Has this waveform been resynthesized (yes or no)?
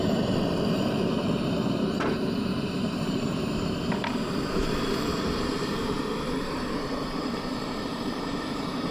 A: yes